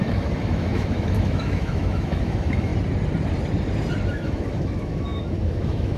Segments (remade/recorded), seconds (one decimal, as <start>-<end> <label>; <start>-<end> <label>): 0.0-2.7 remade; 2.7-4.1 recorded; 4.1-6.0 remade